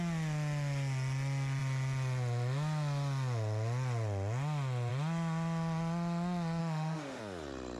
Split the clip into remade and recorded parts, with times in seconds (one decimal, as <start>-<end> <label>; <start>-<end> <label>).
0.0-6.6 recorded; 6.6-7.2 remade; 7.2-7.8 recorded